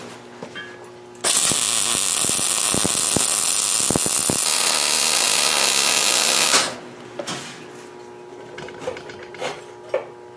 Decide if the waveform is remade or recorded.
recorded